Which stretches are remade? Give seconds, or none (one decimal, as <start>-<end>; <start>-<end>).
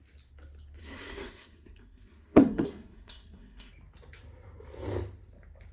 0.8-3.7